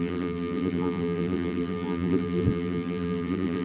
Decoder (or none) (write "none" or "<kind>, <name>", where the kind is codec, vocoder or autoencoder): vocoder, BigVGAN v2